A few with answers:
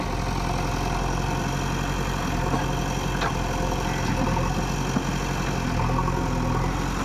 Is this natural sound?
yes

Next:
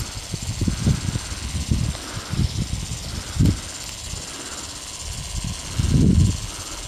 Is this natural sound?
yes